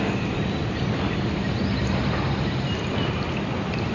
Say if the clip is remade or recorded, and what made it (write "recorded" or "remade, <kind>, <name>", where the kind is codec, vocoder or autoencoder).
recorded